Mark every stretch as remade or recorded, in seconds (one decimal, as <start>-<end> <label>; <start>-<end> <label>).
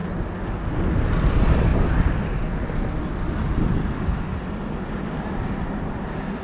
0.0-6.4 recorded